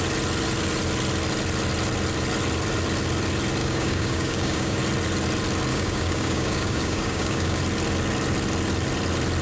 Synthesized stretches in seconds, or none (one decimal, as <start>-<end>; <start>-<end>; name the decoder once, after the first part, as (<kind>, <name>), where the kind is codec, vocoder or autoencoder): 3.6-4.8 (codec, DAC); 5.7-7.6